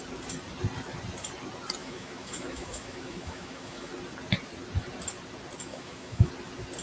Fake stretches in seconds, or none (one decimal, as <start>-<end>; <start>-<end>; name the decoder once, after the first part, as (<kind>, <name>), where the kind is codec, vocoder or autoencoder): 1.8-3.9 (autoencoder, DAC-VAE); 5.7-6.3